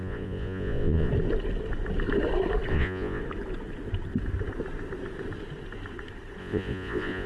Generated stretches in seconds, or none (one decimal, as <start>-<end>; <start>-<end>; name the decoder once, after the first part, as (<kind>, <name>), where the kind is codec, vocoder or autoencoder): 0.0-1.1 (vocoder, Vocos); 2.7-3.2; 6.4-7.3